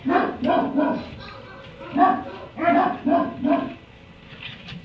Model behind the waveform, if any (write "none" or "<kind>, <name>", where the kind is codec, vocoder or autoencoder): none